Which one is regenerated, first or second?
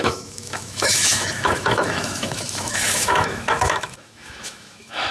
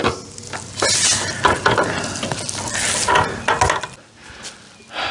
first